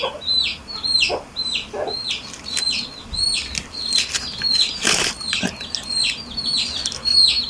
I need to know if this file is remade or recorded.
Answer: recorded